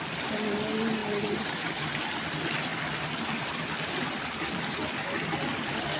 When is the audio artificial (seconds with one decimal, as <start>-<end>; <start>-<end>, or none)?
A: none